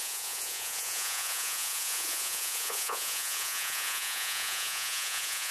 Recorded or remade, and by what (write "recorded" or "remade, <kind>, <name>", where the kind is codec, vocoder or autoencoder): remade, vocoder, Vocos